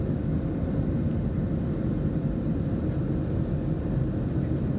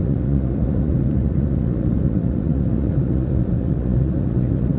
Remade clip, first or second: second